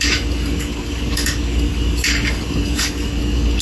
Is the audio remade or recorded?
remade